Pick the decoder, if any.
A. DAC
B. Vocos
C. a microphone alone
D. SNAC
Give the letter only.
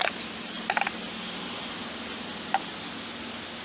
C